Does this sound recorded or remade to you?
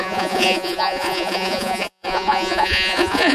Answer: remade